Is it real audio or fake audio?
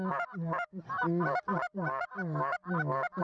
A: real